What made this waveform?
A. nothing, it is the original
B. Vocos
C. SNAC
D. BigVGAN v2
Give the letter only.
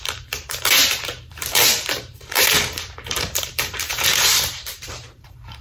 D